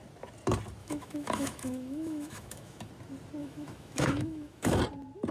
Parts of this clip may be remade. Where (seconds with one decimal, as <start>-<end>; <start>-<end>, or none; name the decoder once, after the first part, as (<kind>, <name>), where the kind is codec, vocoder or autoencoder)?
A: 0.8-2.9 (autoencoder, DAC-VAE); 3.4-4.8

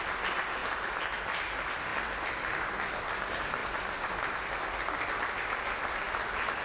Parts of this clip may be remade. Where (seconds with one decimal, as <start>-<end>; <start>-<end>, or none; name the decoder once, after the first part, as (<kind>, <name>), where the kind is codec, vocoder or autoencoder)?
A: 0.6-1.2 (vocoder, BigVGAN v2); 1.9-3.1; 3.6-6.0

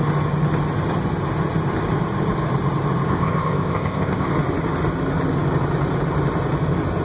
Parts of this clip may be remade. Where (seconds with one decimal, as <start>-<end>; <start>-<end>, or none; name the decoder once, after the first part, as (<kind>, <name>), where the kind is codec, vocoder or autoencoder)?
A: 3.1-4.3 (codec, ZipCodec)

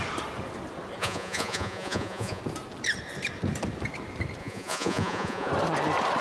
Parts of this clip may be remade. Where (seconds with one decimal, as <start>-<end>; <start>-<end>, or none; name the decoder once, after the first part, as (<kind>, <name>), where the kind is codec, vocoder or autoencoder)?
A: 1.0-2.4 (vocoder, Vocos); 4.4-5.5

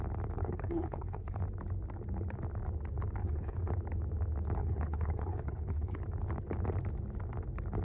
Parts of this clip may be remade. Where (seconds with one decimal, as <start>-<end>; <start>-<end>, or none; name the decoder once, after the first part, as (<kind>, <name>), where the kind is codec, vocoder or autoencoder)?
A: 0.4-1.4 (codec, HILCodec); 3.2-3.7; 4.6-6.0

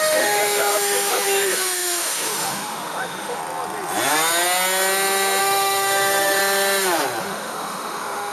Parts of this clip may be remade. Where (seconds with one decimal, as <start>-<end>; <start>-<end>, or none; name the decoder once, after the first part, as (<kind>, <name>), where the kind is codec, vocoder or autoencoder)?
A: 0.0-3.4 (autoencoder, DAC-VAE); 5.4-6.4; 7.2-8.3

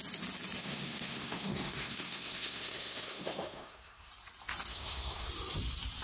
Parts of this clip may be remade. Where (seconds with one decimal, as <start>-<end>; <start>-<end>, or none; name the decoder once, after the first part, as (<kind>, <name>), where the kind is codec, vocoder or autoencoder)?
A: 0.6-4.1 (codec, SNAC); 4.7-5.3